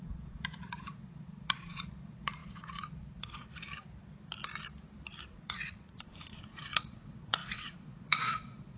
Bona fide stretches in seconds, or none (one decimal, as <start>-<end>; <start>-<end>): 3.5-5.2